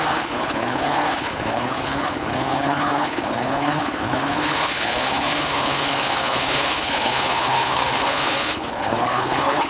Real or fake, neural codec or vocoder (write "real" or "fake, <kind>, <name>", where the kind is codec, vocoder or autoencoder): fake, codec, HILCodec